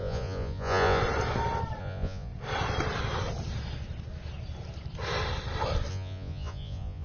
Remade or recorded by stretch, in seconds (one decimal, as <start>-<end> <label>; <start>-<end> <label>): 0.0-1.0 remade; 1.0-1.8 recorded; 1.8-2.3 remade; 2.3-5.9 recorded; 5.9-7.0 remade

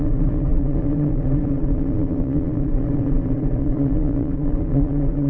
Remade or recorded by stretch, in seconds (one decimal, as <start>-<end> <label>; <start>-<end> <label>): 0.0-5.3 remade